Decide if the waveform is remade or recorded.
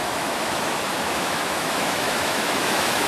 remade